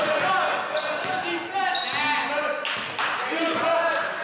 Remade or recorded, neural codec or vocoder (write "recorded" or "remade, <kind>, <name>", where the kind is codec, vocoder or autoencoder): recorded